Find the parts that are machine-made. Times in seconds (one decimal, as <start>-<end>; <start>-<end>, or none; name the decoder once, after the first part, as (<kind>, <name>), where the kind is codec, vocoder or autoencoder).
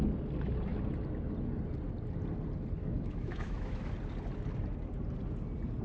2.8-3.9 (autoencoder, DAC-VAE)